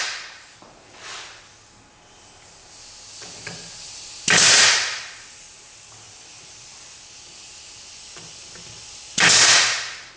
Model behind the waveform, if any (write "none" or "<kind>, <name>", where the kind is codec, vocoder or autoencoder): none